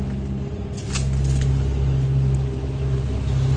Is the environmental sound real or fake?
real